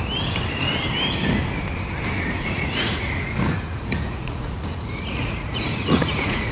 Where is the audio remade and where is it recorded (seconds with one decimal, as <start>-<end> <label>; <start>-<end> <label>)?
0.0-2.4 recorded; 2.4-6.5 remade